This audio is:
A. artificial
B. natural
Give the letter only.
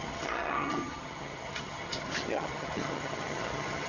A